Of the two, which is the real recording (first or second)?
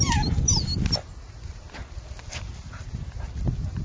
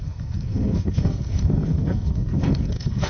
first